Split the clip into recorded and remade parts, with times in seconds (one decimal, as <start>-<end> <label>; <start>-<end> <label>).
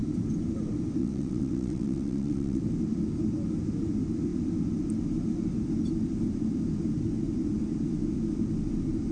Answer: 0.0-1.0 recorded; 1.0-2.6 remade; 2.6-9.1 recorded